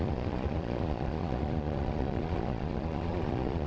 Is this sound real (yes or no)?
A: no